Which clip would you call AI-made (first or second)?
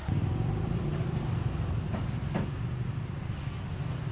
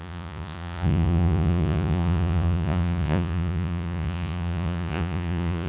second